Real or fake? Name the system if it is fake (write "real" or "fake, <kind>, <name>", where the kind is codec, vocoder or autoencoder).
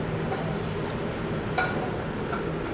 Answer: real